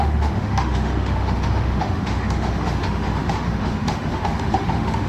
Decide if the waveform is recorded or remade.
remade